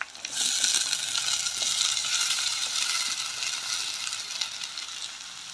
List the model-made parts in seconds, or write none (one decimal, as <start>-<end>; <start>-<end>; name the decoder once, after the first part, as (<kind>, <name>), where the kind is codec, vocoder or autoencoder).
2.0-2.8 (vocoder, BigVGAN v2)